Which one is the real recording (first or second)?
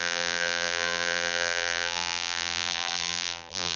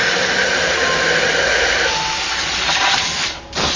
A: second